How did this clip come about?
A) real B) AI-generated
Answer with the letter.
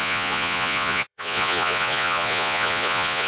B